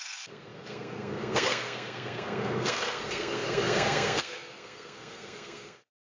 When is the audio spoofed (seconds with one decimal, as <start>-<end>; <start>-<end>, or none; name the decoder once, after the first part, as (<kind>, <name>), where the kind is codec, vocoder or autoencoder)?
0.0-6.1 (codec, SNAC)